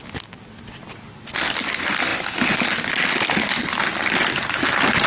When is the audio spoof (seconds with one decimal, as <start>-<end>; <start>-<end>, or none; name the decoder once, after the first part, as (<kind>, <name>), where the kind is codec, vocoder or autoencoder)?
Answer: none

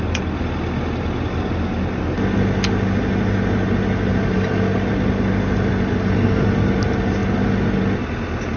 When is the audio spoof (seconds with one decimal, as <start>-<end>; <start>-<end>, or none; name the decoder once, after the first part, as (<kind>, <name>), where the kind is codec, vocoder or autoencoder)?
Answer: none